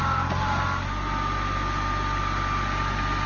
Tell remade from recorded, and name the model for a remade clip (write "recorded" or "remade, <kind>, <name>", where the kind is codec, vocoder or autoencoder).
recorded